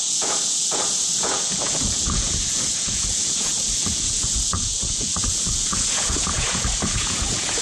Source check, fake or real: fake